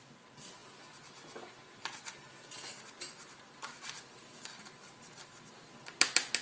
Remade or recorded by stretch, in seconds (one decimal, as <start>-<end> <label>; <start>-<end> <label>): 0.0-6.4 recorded